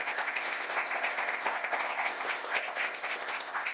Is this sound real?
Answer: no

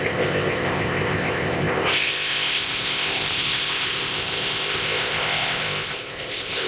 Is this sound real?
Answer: no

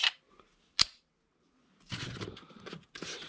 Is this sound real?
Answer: yes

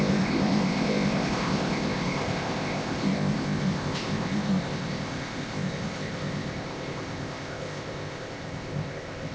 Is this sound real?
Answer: no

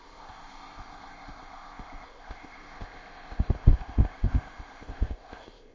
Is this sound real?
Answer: no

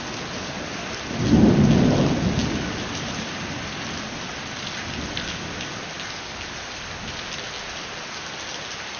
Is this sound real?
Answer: yes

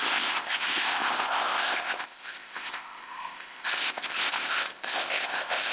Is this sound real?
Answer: no